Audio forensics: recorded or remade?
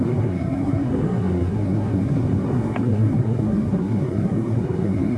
remade